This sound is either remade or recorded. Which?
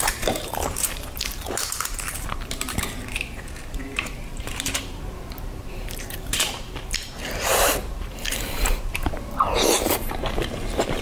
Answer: remade